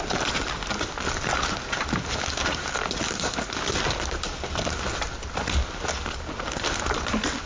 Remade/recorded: recorded